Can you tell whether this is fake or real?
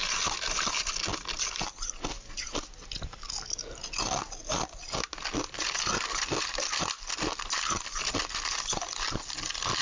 real